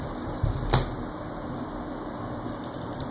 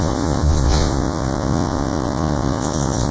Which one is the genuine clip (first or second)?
first